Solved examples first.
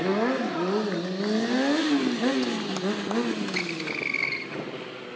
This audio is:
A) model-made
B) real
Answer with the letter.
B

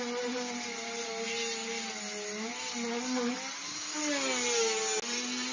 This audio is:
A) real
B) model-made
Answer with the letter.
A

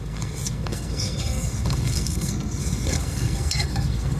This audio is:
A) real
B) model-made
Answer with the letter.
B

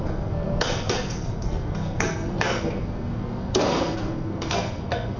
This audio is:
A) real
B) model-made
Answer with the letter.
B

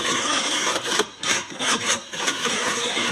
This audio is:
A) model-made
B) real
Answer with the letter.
A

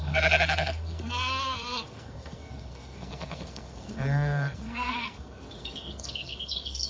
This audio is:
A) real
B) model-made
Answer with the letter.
B